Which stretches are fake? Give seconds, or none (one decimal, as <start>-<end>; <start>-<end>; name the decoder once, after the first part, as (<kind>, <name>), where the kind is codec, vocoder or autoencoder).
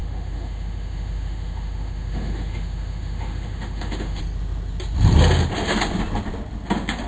0.0-4.2 (autoencoder, DAC-VAE)